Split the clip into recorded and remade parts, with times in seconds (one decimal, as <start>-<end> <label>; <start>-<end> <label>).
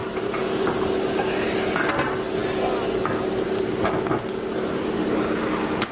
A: 0.0-0.9 remade; 0.9-5.9 recorded